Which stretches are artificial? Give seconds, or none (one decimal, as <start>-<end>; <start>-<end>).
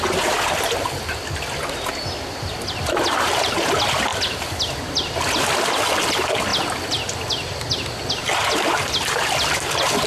none